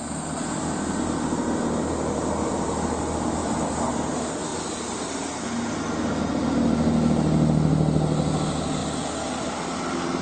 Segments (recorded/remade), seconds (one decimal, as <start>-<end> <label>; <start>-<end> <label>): 0.0-10.2 recorded